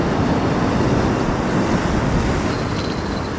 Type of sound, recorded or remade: recorded